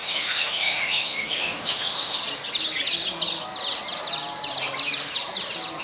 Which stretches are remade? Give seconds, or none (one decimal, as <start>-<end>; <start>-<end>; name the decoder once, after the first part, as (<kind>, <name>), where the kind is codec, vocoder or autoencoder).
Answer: 0.0-2.2 (autoencoder, DAC-VAE)